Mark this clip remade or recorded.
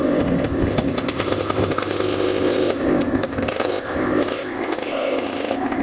remade